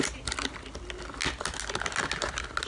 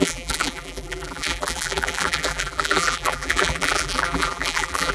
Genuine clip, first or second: first